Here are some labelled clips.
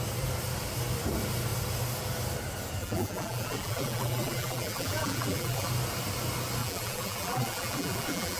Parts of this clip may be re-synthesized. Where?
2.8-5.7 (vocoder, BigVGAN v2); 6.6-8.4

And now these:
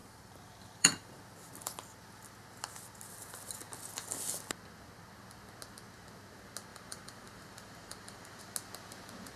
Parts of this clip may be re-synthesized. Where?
0.0-1.2 (vocoder, BigVGAN v2); 6.7-8.4

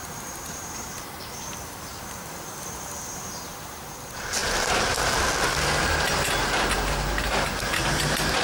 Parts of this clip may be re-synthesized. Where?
0.0-3.6 (vocoder, BigVGAN v2)

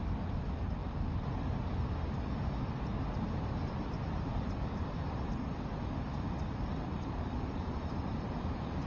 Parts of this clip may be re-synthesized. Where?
0.8-1.3 (vocoder, BigVGAN v2); 2.9-5.3; 6.9-7.9

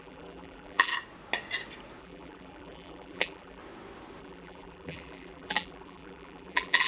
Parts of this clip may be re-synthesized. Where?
0.0-0.9 (vocoder, BigVGAN v2); 2.0-3.6; 4.2-6.9

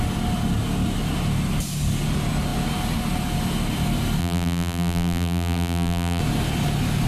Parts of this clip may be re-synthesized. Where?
4.2-6.2 (vocoder, BigVGAN v2)

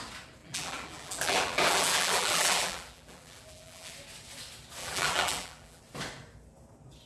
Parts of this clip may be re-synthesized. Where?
0.4-3.9 (vocoder, BigVGAN v2); 4.8-5.8

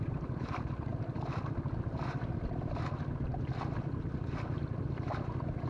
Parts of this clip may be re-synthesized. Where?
0.0-0.9 (vocoder, BigVGAN v2); 4.0-5.7